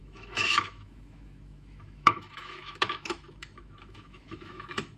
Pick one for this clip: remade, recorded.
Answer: remade